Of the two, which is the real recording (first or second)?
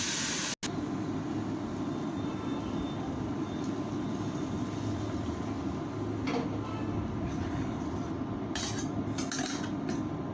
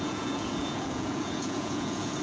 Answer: first